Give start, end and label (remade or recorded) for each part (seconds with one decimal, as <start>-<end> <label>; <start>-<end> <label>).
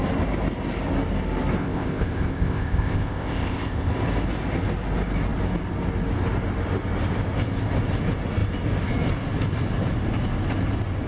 0.0-1.6 recorded; 1.6-3.9 remade; 3.9-11.1 recorded